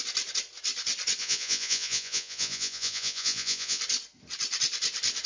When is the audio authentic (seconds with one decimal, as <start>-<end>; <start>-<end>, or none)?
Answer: 0.0-1.2; 3.8-5.3